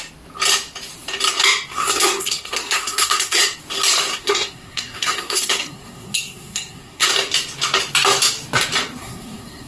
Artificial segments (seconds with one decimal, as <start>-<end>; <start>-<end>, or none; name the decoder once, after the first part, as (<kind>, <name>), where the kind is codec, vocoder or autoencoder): 1.7-3.4 (codec, SNAC); 4.1-7.1; 9.0-9.7